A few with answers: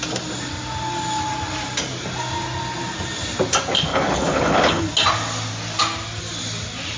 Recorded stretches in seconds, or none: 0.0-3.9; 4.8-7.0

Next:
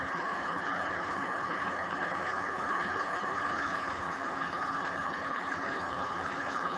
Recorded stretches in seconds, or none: none

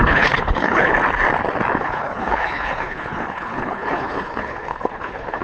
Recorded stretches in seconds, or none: 0.9-1.8